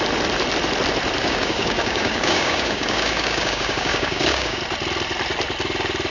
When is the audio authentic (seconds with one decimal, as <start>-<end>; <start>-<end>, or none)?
0.0-1.2; 4.6-6.1